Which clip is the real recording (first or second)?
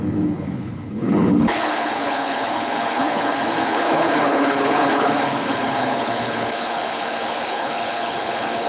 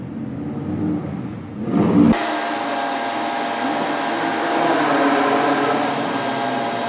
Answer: second